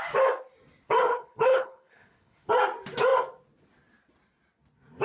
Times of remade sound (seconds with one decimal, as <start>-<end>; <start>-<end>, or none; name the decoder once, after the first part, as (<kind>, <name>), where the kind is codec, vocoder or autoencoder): 1.1-2.5 (codec, HILCodec)